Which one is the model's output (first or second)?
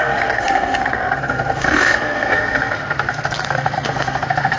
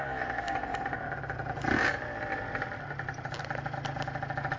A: first